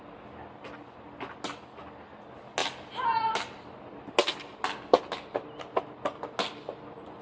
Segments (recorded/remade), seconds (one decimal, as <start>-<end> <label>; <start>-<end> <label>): 0.0-7.2 recorded